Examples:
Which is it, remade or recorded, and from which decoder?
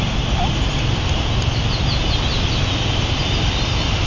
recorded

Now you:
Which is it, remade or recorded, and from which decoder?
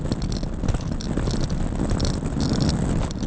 recorded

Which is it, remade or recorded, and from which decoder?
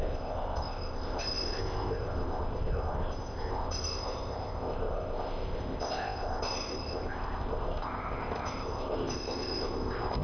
remade, codec, ZipCodec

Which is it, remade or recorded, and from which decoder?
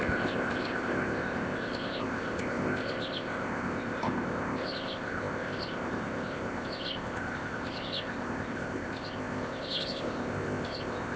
remade, codec, ZipCodec